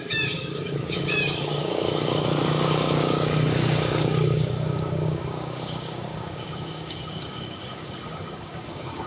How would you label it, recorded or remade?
remade